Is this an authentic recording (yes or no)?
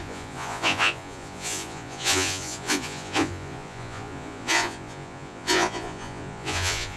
no